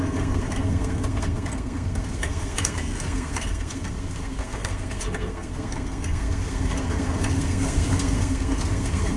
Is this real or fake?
fake